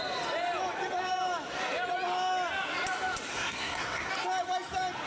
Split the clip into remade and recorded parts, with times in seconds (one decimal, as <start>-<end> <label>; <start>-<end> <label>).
0.0-3.3 recorded; 3.3-4.1 remade; 4.1-5.1 recorded